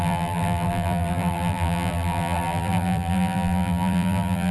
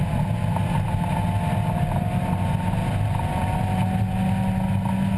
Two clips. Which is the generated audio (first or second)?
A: first